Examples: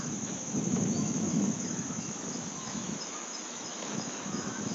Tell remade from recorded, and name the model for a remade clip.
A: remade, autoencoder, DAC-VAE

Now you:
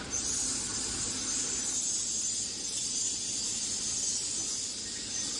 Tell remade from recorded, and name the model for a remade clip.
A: recorded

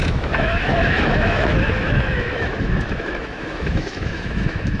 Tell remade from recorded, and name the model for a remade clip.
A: remade, autoencoder, DAC-VAE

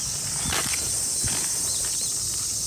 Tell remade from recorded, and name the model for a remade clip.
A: recorded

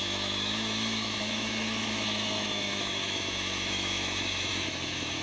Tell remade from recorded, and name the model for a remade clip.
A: remade, autoencoder, DAC-VAE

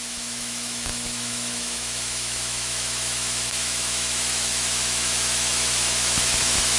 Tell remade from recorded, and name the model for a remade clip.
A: remade, autoencoder, DAC-VAE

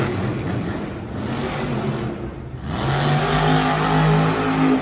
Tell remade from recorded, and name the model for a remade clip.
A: recorded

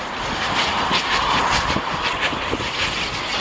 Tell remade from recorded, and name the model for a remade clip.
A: recorded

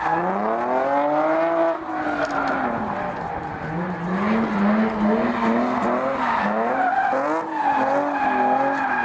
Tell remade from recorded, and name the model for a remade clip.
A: recorded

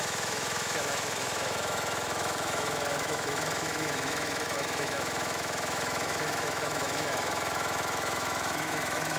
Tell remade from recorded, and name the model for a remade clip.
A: remade, autoencoder, DAC-VAE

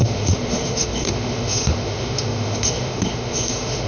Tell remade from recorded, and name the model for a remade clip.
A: remade, autoencoder, DAC-VAE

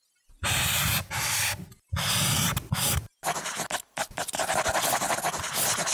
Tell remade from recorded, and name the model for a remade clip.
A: recorded